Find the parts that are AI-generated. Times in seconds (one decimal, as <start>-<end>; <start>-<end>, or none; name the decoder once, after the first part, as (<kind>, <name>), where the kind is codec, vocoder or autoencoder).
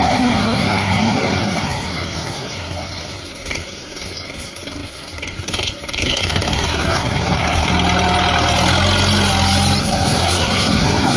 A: 0.0-7.7 (codec, SNAC); 9.8-11.2